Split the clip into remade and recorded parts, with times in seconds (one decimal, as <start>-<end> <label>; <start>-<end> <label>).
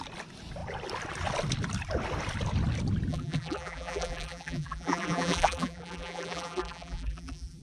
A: 0.0-3.1 recorded; 3.1-7.6 remade